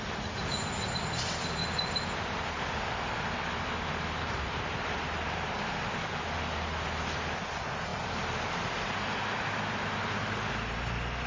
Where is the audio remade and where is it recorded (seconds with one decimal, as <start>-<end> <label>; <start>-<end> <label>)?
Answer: 0.0-1.6 recorded; 1.6-3.2 remade; 3.2-11.3 recorded